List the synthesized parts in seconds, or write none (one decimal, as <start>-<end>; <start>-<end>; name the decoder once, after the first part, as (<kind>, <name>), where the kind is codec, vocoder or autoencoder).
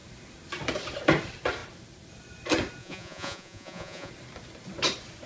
2.8-4.1 (vocoder, Vocos)